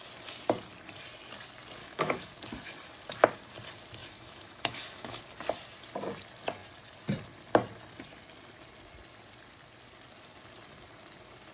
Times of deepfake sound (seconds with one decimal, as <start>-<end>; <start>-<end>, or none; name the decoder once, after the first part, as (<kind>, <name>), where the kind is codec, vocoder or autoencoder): 1.8-2.3 (autoencoder, DAC-VAE); 4.0-5.2